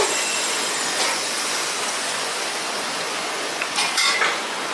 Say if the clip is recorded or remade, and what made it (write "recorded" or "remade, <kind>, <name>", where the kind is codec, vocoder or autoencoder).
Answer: remade, vocoder, Vocos